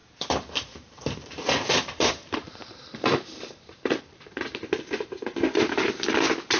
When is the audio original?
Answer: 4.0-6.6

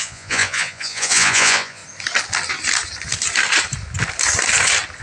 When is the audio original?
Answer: 1.8-5.0

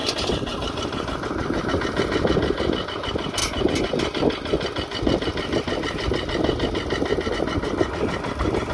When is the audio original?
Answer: 1.7-8.7

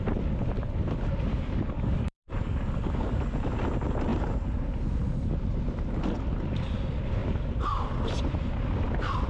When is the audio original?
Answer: 0.0-1.3; 3.2-9.3